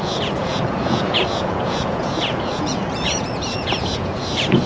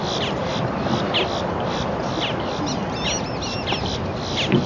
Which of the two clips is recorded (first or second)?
second